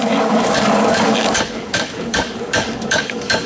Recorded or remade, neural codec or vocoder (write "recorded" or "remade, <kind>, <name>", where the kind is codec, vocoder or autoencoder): remade, codec, DAC